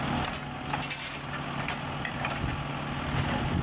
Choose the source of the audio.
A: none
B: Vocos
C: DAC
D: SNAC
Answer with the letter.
A